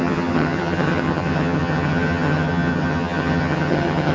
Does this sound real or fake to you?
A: fake